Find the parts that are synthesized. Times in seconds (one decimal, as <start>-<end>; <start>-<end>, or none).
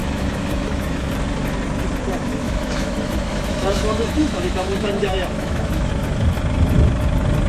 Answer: 0.0-1.1; 2.3-5.9